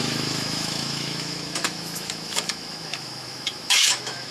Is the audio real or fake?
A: fake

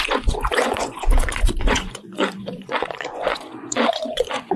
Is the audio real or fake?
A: fake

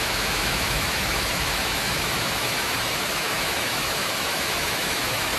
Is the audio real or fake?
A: fake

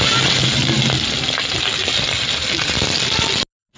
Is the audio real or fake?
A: real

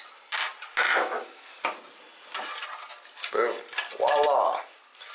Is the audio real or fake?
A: real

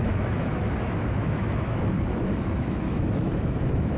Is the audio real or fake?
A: fake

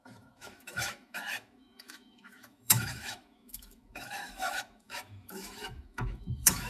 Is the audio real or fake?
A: fake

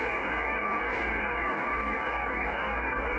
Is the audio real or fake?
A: fake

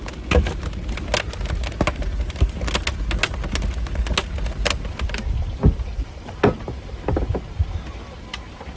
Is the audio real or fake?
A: real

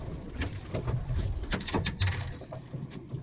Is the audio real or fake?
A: real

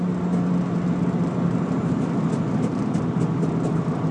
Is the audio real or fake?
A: real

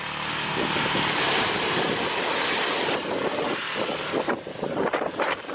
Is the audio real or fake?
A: real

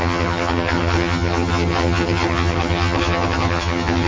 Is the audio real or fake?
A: fake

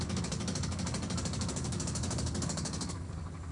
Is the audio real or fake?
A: fake